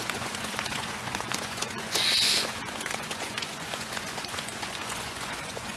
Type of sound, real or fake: fake